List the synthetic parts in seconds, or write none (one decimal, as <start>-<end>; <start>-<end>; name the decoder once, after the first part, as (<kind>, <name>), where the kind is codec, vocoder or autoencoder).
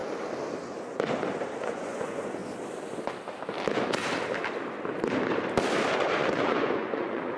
1.6-2.4 (vocoder, Vocos); 5.9-7.4